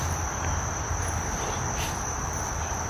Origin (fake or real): fake